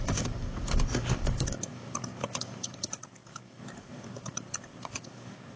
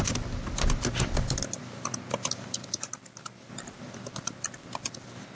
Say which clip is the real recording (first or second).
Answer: second